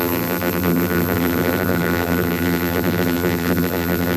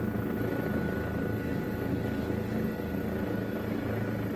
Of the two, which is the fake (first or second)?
first